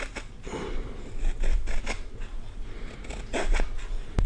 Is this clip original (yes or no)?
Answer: yes